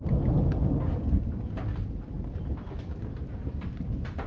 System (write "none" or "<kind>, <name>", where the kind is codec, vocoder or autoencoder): none